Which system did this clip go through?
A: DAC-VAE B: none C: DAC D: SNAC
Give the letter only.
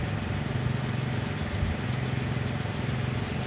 B